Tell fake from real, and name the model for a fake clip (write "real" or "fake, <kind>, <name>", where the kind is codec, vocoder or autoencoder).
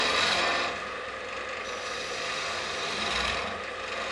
real